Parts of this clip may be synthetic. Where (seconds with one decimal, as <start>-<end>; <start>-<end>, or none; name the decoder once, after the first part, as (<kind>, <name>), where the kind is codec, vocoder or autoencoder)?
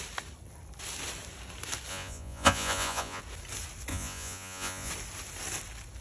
1.9-3.2 (vocoder, Vocos); 3.9-4.9